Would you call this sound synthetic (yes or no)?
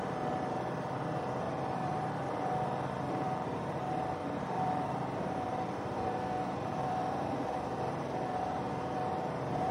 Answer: yes